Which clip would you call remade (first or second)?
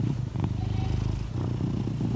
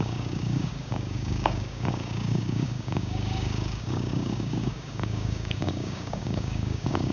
second